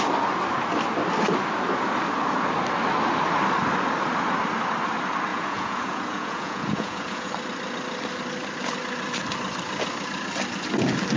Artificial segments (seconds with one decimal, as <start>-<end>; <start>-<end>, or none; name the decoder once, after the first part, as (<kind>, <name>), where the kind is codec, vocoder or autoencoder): 5.3-7.3 (vocoder, Vocos)

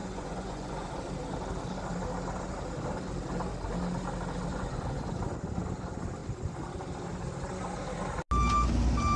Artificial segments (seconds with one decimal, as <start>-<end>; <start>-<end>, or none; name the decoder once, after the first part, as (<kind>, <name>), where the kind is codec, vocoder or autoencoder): 0.0-0.9 (vocoder, Vocos); 4.5-5.1

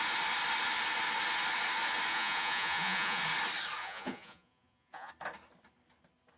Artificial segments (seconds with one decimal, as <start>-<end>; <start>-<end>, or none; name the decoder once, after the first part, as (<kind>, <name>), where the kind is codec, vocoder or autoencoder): 2.1-3.2 (vocoder, Vocos); 3.8-5.1

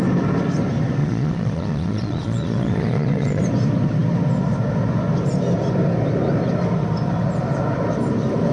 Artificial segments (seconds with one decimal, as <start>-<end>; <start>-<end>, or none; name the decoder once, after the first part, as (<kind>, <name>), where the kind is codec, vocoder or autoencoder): 1.0-3.4 (vocoder, Vocos)

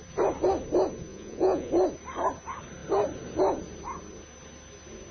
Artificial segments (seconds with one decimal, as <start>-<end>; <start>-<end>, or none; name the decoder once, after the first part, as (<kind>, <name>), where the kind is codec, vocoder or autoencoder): 1.1-1.7 (vocoder, Vocos)